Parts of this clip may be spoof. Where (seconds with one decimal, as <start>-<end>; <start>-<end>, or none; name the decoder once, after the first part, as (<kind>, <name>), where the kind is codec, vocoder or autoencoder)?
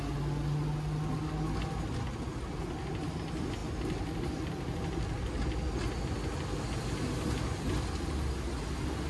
none